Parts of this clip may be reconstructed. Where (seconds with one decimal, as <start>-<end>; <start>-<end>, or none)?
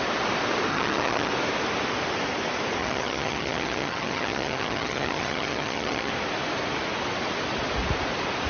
0.7-1.3; 2.8-6.1